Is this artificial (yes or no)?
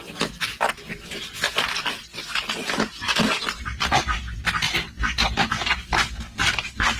no